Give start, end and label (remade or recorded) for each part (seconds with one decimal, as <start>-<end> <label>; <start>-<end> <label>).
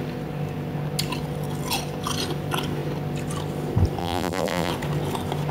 0.0-4.0 recorded; 4.0-4.7 remade; 4.7-5.5 recorded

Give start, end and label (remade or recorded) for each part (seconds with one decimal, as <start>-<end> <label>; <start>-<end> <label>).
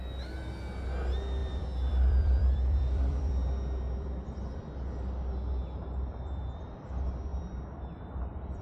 0.0-1.4 recorded; 1.4-4.5 remade; 4.5-5.6 recorded; 5.6-6.4 remade; 6.4-7.3 recorded; 7.3-8.2 remade; 8.2-8.6 recorded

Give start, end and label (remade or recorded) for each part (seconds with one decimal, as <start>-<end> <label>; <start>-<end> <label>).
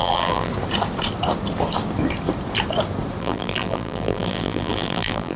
0.0-0.5 remade; 0.5-3.2 recorded; 3.2-5.4 remade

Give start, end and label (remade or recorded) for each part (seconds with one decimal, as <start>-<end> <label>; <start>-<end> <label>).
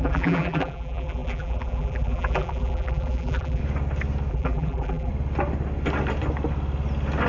0.0-3.6 remade; 3.6-4.3 recorded; 4.3-5.1 remade; 5.1-7.3 recorded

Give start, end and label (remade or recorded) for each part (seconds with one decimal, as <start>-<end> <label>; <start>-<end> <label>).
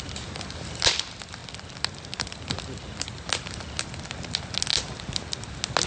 0.0-1.4 recorded; 1.4-4.3 remade; 4.3-4.7 recorded; 4.7-5.5 remade; 5.5-5.9 recorded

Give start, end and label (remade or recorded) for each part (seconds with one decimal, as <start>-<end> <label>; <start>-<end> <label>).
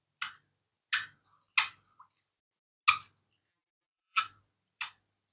0.0-3.5 recorded; 3.5-4.2 remade; 4.2-5.3 recorded